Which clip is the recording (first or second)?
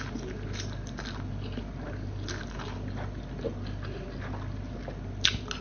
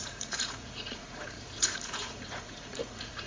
first